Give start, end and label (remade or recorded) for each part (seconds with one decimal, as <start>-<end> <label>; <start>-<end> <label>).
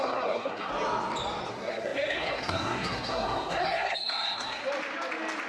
0.0-0.7 remade; 0.7-1.5 recorded; 1.5-4.6 remade; 4.6-5.5 recorded